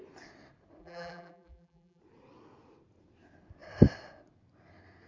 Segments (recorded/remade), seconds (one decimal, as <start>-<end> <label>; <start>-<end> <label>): 0.0-0.8 recorded; 0.8-2.0 remade; 2.0-5.1 recorded